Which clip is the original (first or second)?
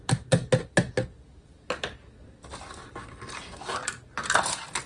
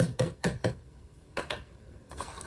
first